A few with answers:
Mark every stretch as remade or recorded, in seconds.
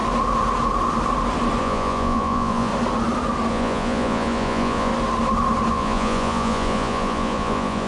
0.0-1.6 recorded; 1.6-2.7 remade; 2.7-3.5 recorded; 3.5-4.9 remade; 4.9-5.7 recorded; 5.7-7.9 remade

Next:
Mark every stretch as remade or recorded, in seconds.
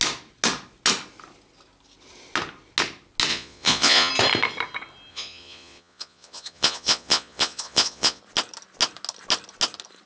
0.0-3.3 recorded; 3.3-4.1 remade; 4.1-5.1 recorded; 5.1-8.2 remade; 8.2-10.1 recorded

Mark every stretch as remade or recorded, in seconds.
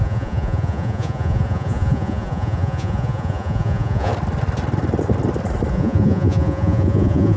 0.0-4.1 remade; 4.1-5.7 recorded; 5.7-7.4 remade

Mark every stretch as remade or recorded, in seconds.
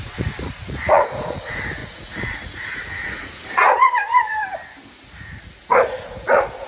0.0-4.4 remade; 4.4-4.9 recorded; 4.9-6.7 remade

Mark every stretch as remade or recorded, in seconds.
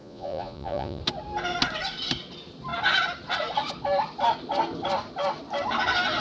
0.0-1.0 remade; 1.0-6.2 recorded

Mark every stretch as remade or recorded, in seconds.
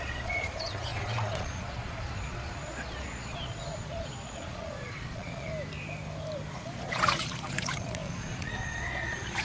0.0-5.5 remade; 5.5-6.5 recorded; 6.5-9.4 remade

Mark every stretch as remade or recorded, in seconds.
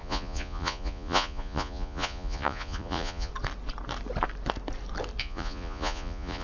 0.0-3.3 remade; 3.3-5.2 recorded; 5.2-6.4 remade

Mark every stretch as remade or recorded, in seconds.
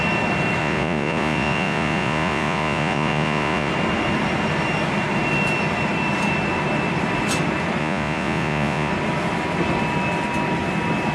0.0-0.6 recorded; 0.6-3.7 remade; 3.7-7.8 recorded; 7.8-8.9 remade; 8.9-11.1 recorded